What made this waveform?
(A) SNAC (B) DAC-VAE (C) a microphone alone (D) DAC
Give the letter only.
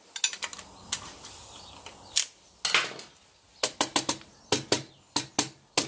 C